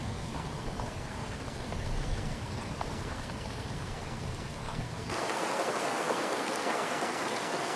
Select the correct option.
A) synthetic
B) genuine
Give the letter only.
A